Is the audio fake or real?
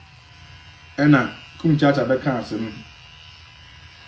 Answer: real